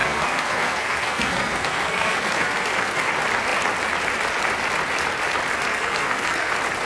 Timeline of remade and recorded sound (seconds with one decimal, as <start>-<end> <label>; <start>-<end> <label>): 0.0-3.1 remade; 3.1-5.7 recorded; 5.7-6.5 remade; 6.5-6.9 recorded